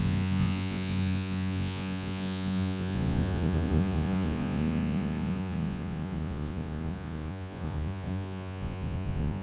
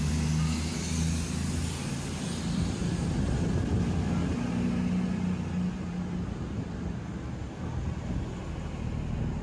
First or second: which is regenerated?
first